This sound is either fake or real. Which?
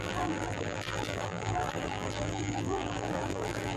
fake